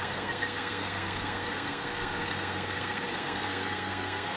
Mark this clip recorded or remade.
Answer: remade